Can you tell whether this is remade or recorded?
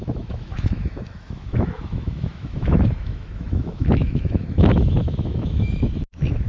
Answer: remade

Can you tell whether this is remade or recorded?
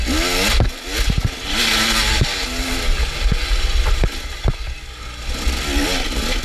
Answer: recorded